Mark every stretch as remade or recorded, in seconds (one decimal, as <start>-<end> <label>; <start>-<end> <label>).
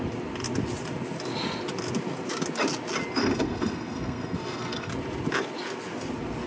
0.0-3.2 recorded; 3.2-4.9 remade; 4.9-6.5 recorded